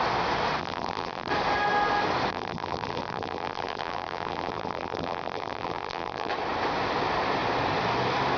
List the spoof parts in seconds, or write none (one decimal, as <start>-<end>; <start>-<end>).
0.6-1.3; 2.3-6.3